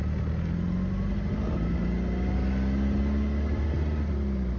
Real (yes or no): yes